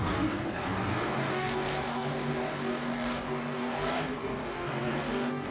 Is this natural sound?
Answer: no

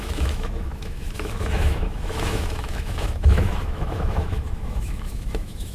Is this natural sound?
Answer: no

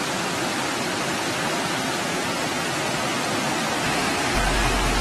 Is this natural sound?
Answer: yes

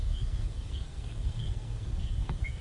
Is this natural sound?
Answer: no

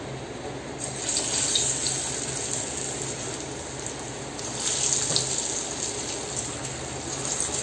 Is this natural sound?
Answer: yes